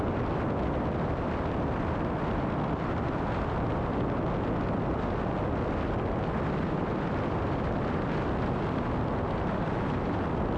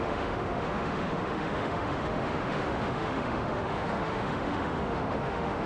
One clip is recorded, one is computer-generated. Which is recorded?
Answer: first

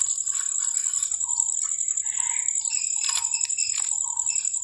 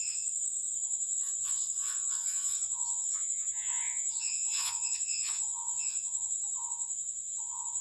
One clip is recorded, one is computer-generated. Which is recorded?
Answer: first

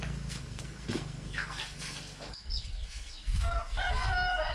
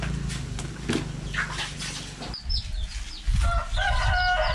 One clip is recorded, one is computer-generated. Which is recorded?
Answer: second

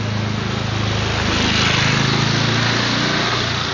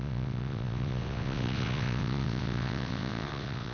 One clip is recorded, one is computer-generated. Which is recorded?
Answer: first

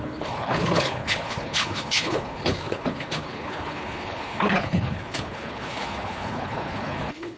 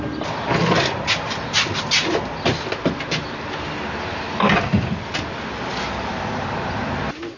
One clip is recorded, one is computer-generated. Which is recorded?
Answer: second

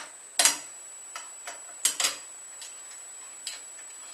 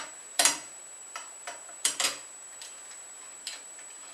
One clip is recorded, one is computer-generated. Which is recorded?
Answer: first